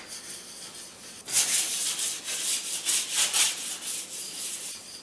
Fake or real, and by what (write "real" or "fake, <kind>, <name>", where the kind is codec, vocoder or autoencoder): real